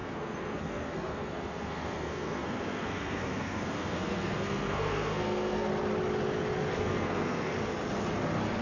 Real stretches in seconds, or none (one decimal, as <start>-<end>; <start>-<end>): 5.7-6.7; 7.5-8.6